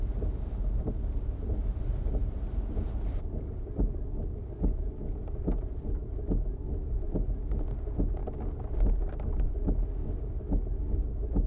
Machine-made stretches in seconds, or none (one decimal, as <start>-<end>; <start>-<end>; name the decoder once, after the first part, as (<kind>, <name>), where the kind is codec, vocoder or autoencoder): 2.2-5.8 (vocoder, BigVGAN v2)

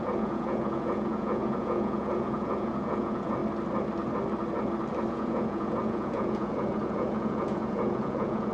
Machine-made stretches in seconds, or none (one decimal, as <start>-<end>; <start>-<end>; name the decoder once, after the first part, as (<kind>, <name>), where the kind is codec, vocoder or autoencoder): 0.0-3.4 (vocoder, Vocos); 5.1-8.5